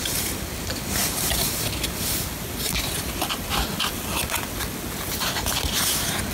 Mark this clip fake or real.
real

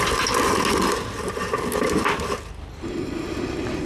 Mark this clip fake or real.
real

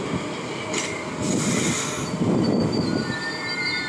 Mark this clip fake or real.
real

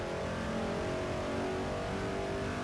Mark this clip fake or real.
real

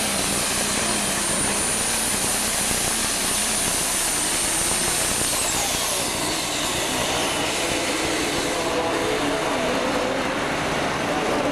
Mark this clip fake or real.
real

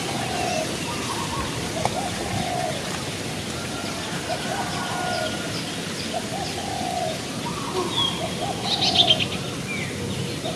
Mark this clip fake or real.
real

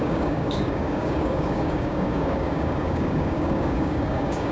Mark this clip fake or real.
fake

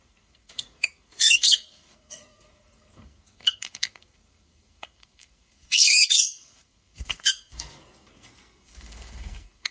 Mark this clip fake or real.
fake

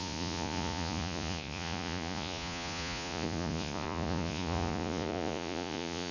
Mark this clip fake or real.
fake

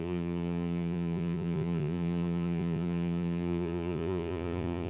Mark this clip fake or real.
fake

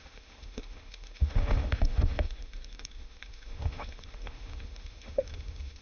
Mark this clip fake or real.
fake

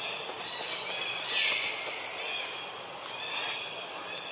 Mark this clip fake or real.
real